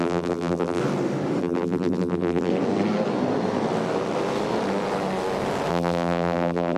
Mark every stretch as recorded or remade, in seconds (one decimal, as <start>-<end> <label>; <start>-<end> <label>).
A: 0.0-0.8 remade; 0.8-1.4 recorded; 1.4-2.5 remade; 2.5-5.7 recorded; 5.7-6.8 remade